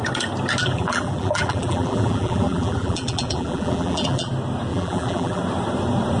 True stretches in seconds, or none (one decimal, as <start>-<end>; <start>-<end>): 0.0-0.6; 4.3-4.7; 5.4-6.2